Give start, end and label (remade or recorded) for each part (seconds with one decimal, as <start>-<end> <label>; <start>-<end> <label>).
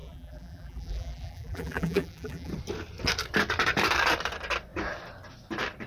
0.0-2.5 remade; 2.5-5.9 recorded